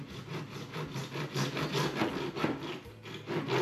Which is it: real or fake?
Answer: real